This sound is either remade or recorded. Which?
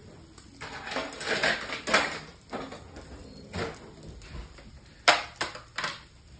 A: recorded